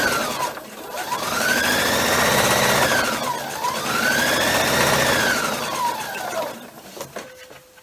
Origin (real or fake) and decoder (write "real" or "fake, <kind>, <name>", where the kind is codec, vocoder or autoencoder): real